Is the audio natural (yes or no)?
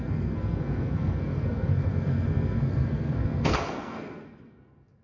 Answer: no